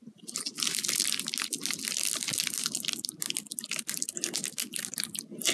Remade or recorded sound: recorded